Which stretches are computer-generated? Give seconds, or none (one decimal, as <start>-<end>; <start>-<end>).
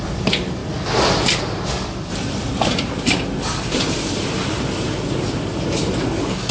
2.1-6.0